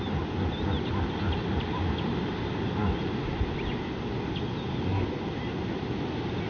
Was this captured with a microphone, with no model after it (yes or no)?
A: yes